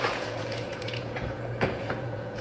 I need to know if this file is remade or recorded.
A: remade